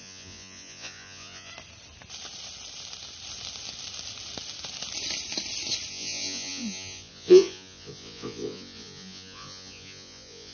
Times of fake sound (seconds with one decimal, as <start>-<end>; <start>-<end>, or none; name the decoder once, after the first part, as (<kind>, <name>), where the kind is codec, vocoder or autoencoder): 0.0-1.5 (vocoder, Vocos); 5.9-10.5